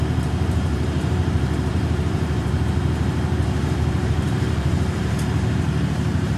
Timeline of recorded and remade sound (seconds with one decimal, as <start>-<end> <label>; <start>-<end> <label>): 0.0-6.4 remade